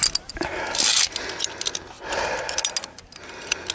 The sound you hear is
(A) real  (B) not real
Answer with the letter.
A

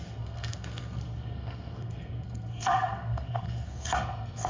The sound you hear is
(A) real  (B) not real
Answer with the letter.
B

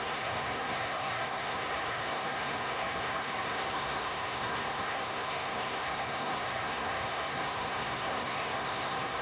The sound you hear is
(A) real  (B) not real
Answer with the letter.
B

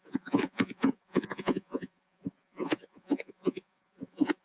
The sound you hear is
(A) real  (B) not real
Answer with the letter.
B